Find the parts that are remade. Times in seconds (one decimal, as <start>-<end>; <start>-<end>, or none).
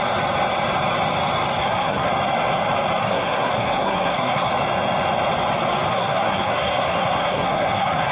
1.6-2.1; 3.0-4.5; 5.9-8.1